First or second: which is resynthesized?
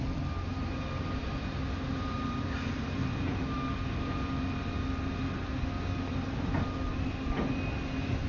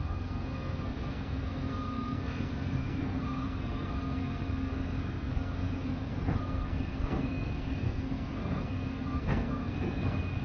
second